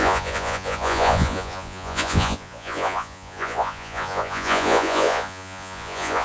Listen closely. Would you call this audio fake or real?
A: fake